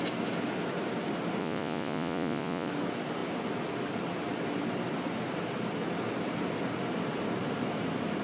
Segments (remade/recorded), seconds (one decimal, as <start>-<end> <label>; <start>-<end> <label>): 0.0-1.4 recorded; 1.4-2.7 remade; 2.7-8.2 recorded